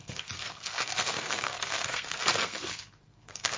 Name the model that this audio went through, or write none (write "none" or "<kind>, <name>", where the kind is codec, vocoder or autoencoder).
codec, SNAC